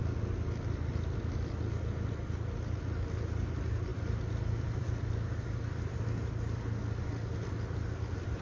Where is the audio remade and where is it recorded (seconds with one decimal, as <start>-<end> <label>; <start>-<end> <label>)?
0.0-8.4 recorded